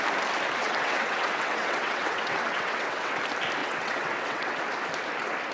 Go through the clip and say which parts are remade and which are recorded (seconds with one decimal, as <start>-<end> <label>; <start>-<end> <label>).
0.0-0.6 recorded; 0.6-3.2 remade; 3.2-3.6 recorded; 3.6-4.6 remade; 4.6-5.5 recorded